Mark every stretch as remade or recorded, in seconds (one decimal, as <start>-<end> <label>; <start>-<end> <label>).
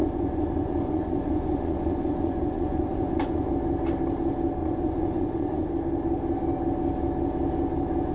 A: 0.0-3.5 remade; 3.5-4.6 recorded; 4.6-5.7 remade; 5.7-8.1 recorded